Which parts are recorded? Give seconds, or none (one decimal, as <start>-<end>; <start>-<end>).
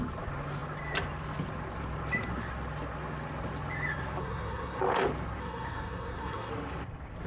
0.0-4.2; 4.8-5.4; 6.5-7.3